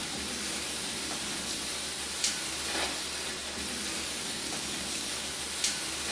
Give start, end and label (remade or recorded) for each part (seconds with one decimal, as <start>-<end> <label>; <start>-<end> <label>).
0.0-3.9 recorded; 3.9-5.4 remade; 5.4-6.1 recorded

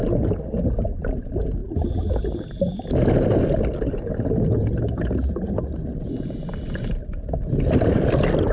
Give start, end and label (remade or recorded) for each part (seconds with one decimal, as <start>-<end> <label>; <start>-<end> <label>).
0.0-8.5 recorded

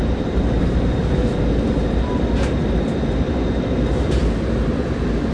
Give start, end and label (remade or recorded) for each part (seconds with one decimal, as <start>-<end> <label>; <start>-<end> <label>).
0.0-1.0 remade; 1.0-3.3 recorded; 3.3-4.2 remade; 4.2-5.3 recorded

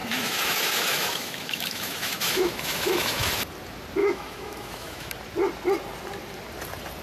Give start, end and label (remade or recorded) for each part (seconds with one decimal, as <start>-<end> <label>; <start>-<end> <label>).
0.0-3.3 remade; 3.3-4.0 recorded; 4.0-5.1 remade; 5.1-7.0 recorded

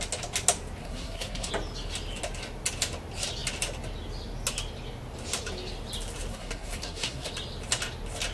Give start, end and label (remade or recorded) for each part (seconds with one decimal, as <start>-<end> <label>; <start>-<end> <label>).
0.0-0.8 recorded; 0.8-1.5 remade; 1.5-6.3 recorded; 6.3-7.3 remade; 7.3-8.3 recorded

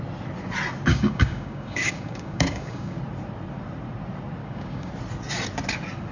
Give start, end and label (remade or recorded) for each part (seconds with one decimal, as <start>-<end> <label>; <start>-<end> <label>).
0.0-0.9 recorded; 0.9-3.0 remade; 3.0-4.4 recorded; 4.4-4.9 remade; 4.9-6.1 recorded